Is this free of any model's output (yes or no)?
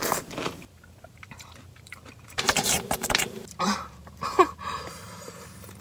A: no